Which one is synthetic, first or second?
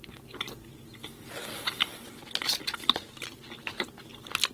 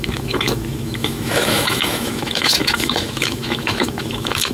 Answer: second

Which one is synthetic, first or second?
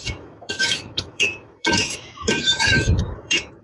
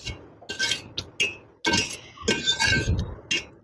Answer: first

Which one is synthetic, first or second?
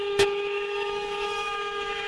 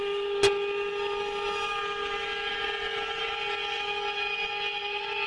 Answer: first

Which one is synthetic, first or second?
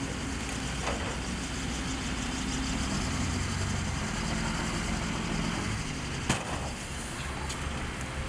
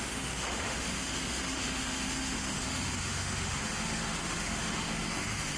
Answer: second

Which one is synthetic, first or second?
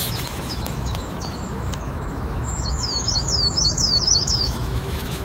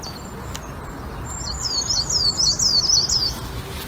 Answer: first